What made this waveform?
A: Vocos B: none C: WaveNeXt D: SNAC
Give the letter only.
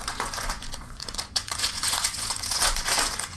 A